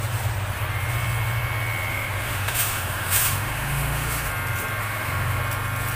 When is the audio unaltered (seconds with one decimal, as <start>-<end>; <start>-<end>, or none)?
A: 0.0-1.9; 4.3-4.8; 5.4-5.9